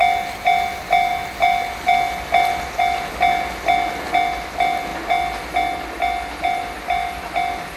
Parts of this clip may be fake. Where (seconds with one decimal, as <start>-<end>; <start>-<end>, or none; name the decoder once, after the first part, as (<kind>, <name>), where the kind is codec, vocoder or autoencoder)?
none